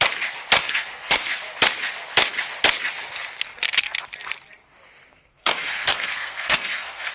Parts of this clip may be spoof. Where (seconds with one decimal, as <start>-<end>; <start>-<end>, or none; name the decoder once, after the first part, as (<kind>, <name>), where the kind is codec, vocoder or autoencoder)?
0.6-1.3 (codec, SNAC); 5.1-7.1